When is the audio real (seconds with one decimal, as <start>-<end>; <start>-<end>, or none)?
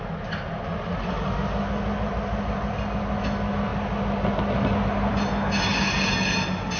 0.0-6.8